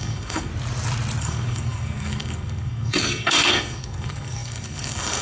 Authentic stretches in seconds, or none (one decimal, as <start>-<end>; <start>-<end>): 0.5-1.2